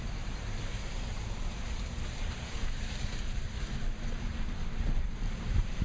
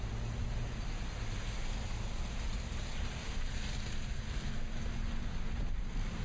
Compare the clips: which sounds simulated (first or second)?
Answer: first